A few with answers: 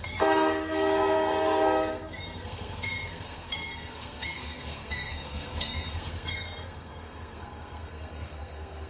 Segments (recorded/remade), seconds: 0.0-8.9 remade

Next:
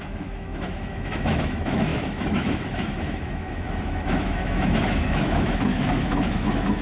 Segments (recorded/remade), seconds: 0.0-6.8 remade

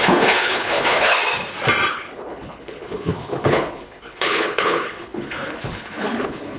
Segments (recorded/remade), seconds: 0.0-1.2 remade; 1.2-1.9 recorded; 1.9-6.6 remade

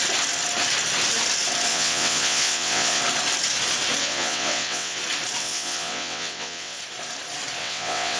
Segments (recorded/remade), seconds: 0.0-1.7 recorded; 1.7-3.0 remade; 3.0-4.0 recorded; 4.0-5.0 remade; 5.0-5.4 recorded; 5.4-6.8 remade; 6.8-7.6 recorded; 7.6-8.2 remade

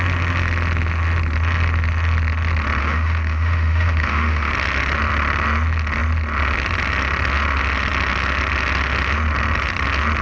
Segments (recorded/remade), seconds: 0.0-2.8 recorded; 2.8-4.5 remade; 4.5-10.2 recorded

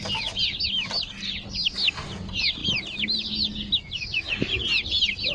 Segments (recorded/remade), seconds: 0.0-5.3 recorded

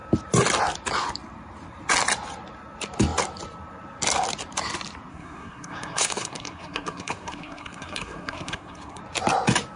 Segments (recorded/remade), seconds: 0.0-5.1 recorded; 5.1-9.0 remade; 9.0-9.8 recorded

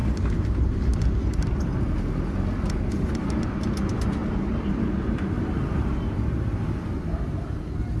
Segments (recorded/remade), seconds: 0.0-8.0 recorded